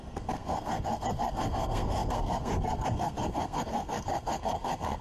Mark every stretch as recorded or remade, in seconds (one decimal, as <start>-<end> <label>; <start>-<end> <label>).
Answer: 0.0-5.0 remade